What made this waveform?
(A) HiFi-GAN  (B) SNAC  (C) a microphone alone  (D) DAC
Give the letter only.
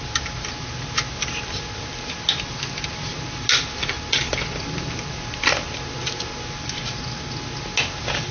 C